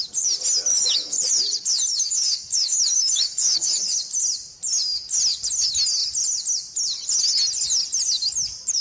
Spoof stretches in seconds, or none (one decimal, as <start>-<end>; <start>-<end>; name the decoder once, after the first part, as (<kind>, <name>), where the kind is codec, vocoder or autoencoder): 0.7-1.4 (autoencoder, DAC-VAE); 1.9-4.0